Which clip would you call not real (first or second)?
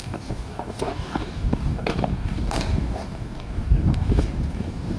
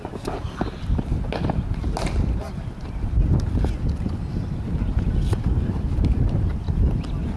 first